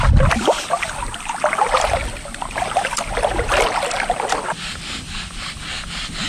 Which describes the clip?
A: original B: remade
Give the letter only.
A